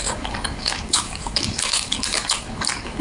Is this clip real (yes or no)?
no